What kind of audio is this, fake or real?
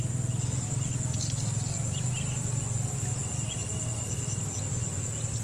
real